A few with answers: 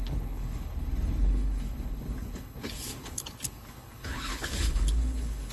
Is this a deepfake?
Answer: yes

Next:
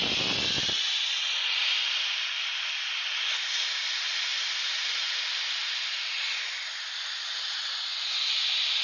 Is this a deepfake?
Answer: no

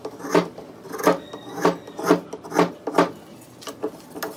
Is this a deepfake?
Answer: no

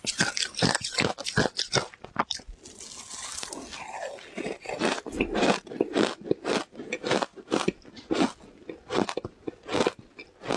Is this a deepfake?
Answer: no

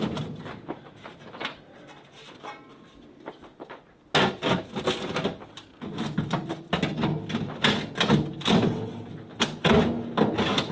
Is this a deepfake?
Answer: no